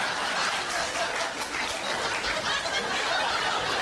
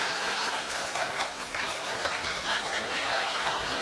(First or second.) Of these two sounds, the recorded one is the first